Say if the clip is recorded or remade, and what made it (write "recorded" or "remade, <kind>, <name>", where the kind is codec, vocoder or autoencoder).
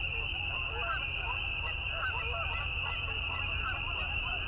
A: recorded